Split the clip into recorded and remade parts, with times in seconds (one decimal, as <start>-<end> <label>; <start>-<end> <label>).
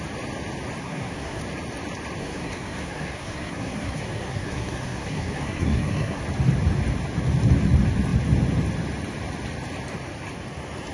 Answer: 0.0-0.8 recorded; 0.8-1.4 remade; 1.4-2.2 recorded; 2.2-6.2 remade; 6.2-10.9 recorded